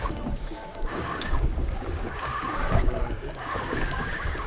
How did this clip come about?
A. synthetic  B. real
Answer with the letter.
A